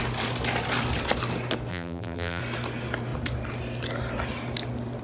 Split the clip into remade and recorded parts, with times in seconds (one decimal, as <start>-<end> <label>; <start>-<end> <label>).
0.0-1.7 recorded; 1.7-2.4 remade; 2.4-5.0 recorded